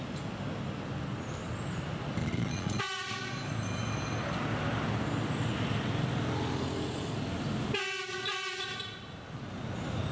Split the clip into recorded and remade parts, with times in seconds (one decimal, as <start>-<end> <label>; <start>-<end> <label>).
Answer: 0.0-2.2 recorded; 2.2-2.8 remade; 2.8-10.1 recorded